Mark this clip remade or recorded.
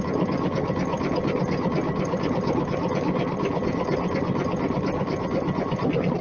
recorded